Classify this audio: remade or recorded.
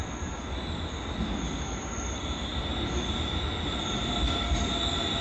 recorded